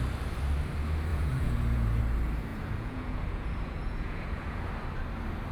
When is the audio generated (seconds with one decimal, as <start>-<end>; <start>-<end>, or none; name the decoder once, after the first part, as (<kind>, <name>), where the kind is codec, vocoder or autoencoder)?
1.1-2.0 (vocoder, Vocos); 2.5-4.7